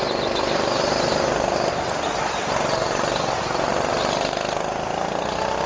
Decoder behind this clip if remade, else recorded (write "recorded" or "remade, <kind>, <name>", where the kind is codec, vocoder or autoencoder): recorded